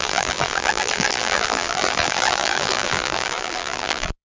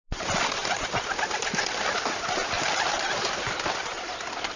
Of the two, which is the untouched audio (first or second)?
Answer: second